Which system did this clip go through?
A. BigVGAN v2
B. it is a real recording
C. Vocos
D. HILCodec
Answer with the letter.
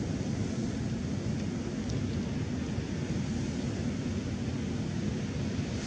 B